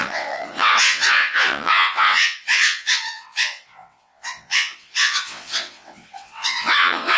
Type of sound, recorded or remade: remade